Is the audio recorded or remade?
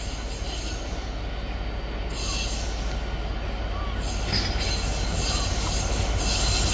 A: recorded